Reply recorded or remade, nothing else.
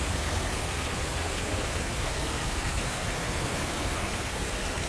remade